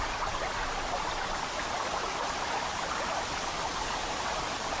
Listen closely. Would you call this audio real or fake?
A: real